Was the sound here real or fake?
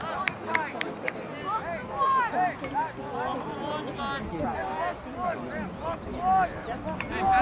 real